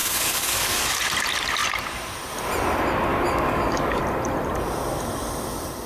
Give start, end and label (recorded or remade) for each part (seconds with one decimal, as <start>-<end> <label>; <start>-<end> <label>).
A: 0.0-1.0 remade; 1.0-3.1 recorded; 3.1-4.0 remade; 4.0-5.9 recorded

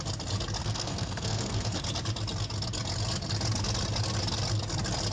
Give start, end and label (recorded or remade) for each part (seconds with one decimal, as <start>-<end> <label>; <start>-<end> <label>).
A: 0.0-0.6 recorded; 0.6-1.8 remade; 1.8-5.1 recorded

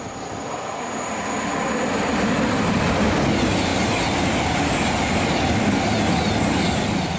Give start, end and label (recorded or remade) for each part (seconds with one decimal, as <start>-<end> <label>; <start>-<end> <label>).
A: 0.0-7.2 recorded

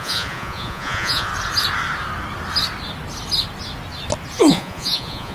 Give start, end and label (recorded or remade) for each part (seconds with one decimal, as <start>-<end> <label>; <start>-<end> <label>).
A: 0.0-1.3 remade; 1.3-4.5 recorded; 4.5-5.3 remade

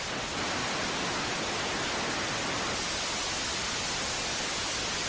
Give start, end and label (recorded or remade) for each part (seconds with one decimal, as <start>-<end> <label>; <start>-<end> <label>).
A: 0.0-5.1 recorded